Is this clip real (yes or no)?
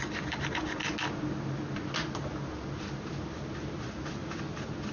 yes